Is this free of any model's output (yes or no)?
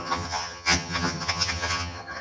no